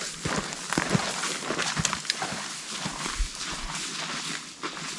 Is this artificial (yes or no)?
no